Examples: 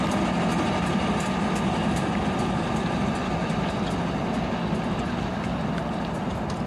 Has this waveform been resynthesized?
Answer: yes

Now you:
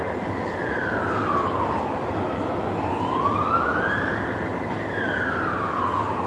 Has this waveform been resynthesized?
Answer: no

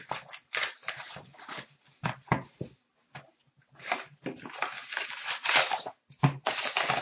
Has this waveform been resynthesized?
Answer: yes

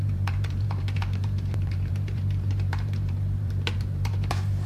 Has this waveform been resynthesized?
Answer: yes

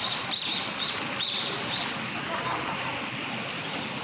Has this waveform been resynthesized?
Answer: yes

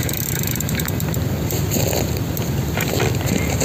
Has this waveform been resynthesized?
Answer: yes